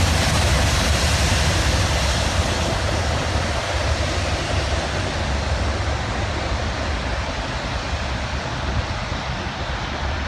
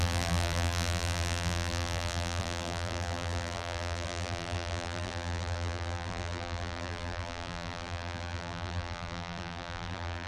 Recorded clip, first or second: first